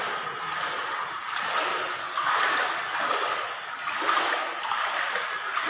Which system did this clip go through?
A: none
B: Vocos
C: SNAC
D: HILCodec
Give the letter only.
A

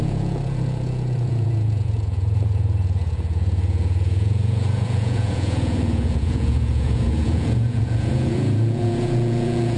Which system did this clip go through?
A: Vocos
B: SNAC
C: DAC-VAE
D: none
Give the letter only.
A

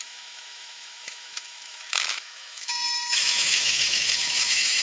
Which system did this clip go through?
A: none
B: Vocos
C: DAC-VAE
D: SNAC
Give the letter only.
C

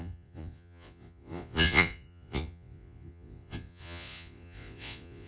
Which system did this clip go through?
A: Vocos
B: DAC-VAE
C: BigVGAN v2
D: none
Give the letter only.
A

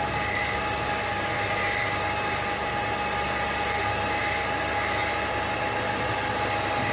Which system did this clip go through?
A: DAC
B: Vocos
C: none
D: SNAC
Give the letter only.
C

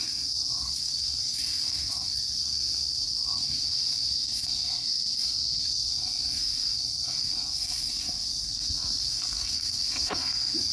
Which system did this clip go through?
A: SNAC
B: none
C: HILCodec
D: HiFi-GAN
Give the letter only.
A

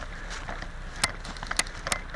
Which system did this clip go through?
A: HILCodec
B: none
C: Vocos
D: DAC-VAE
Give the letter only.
B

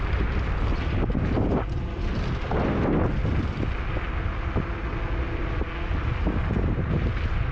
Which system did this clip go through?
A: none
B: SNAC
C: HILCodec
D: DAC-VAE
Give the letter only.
A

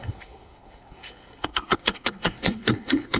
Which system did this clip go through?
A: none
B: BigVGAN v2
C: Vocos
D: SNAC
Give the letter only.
D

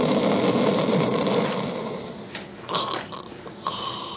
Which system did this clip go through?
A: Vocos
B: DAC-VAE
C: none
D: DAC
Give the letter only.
C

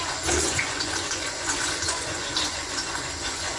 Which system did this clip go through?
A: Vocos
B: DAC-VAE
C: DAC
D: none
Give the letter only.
A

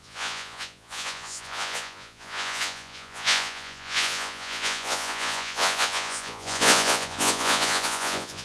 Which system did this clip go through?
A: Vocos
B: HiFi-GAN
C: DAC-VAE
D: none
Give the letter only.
A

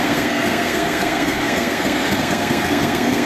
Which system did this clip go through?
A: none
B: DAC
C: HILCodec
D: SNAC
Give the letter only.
D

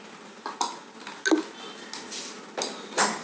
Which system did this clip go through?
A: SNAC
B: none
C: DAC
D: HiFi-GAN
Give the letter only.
B